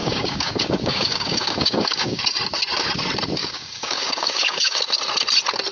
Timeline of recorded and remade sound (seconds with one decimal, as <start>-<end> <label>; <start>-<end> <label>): 0.0-2.2 remade; 2.2-3.4 recorded; 3.4-4.8 remade; 4.8-5.7 recorded